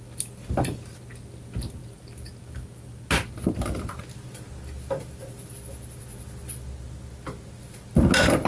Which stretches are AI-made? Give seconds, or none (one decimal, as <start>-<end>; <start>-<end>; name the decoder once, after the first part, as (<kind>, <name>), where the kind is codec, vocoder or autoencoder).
none